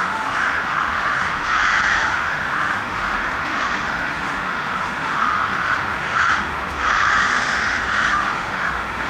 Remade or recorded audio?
remade